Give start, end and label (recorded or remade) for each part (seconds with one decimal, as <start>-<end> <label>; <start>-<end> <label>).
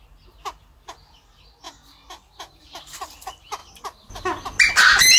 0.0-5.2 recorded